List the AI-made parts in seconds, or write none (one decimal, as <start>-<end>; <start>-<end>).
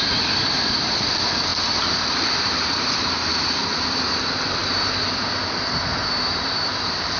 0.0-4.6; 6.1-7.2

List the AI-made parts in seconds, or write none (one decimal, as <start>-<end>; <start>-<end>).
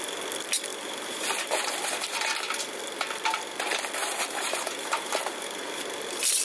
0.7-1.7; 4.0-5.8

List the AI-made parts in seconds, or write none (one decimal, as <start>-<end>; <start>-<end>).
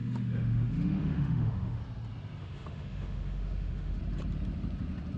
0.0-1.8; 2.4-4.0